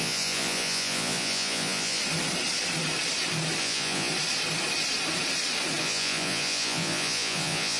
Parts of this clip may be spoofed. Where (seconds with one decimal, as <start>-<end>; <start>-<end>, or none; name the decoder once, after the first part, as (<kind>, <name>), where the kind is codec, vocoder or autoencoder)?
0.0-2.0 (vocoder, Vocos); 3.6-4.1; 5.8-7.8